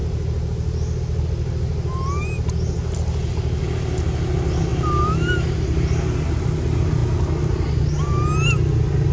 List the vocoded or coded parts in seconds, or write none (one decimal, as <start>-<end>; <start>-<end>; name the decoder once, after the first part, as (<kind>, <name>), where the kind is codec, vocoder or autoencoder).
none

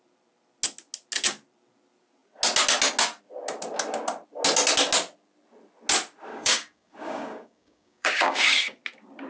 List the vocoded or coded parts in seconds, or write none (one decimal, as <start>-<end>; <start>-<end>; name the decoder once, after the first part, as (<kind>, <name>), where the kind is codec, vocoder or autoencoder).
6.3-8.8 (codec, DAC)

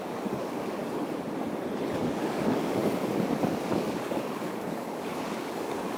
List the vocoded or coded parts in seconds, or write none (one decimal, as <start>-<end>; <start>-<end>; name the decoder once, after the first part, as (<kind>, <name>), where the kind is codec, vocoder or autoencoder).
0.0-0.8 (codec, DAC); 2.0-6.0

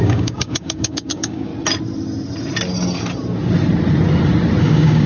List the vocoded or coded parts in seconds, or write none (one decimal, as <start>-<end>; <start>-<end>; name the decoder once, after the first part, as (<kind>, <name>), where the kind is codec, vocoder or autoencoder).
0.0-1.5 (codec, DAC); 4.6-5.1

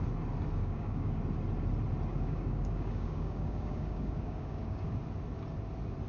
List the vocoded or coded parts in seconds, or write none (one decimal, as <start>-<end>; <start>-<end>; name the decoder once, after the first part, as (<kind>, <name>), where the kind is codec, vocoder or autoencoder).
0.6-1.2 (codec, DAC); 2.1-4.9

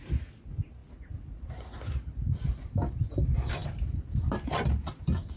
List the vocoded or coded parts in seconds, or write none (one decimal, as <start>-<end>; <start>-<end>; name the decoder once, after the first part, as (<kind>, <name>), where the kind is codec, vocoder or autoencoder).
none

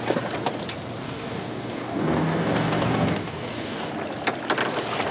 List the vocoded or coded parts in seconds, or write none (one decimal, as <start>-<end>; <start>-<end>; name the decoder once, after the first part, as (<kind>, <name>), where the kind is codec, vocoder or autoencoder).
1.0-3.9 (codec, DAC)